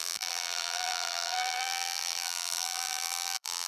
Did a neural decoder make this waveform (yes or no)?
yes